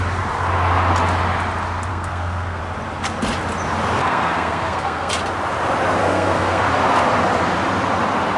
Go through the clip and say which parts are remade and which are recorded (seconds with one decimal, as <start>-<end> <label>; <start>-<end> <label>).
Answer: 0.0-1.9 recorded; 1.9-2.6 remade; 2.6-4.0 recorded; 4.0-5.1 remade; 5.1-6.0 recorded; 6.0-6.6 remade; 6.6-8.4 recorded